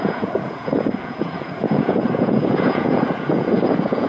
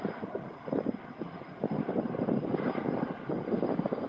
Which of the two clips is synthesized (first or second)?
first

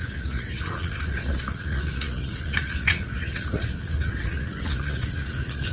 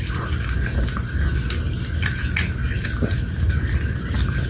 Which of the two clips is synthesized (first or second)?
first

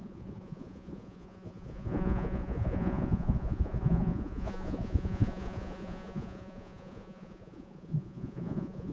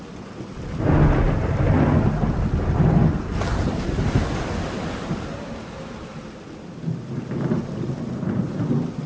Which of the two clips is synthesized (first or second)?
first